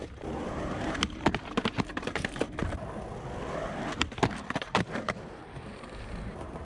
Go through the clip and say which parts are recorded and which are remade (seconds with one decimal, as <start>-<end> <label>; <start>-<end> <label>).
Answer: 0.0-2.6 remade; 2.6-4.6 recorded; 4.6-6.6 remade